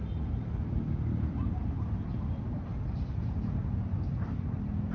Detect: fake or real real